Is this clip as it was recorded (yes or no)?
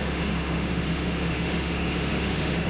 no